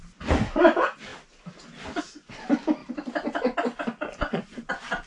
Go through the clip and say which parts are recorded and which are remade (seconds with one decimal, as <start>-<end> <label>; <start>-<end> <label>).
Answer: 0.0-2.8 recorded; 2.8-5.1 remade